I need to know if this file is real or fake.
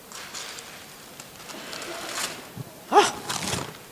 real